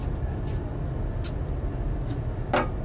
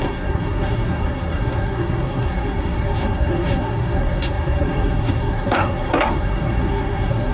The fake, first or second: second